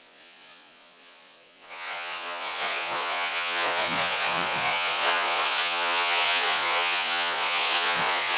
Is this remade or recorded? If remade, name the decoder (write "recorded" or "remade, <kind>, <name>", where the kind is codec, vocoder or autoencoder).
remade, vocoder, Vocos